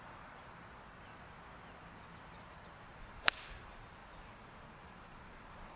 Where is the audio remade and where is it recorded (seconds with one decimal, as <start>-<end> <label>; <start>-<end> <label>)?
0.0-1.1 remade; 1.1-3.2 recorded; 3.2-4.0 remade; 4.0-4.6 recorded; 4.6-5.8 remade